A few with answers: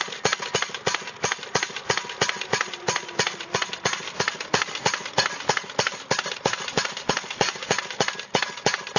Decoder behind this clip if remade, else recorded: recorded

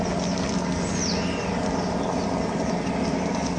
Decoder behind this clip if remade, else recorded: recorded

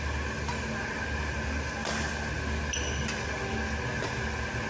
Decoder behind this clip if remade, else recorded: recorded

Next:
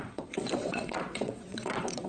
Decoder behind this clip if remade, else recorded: remade, vocoder, WaveNeXt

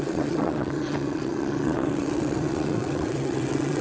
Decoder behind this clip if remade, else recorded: remade, vocoder, WaveNeXt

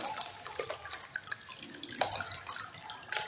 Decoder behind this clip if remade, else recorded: recorded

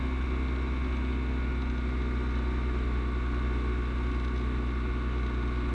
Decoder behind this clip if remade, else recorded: recorded